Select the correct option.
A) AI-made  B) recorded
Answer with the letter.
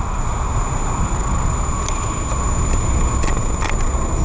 B